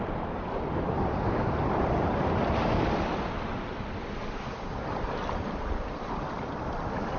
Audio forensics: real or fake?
real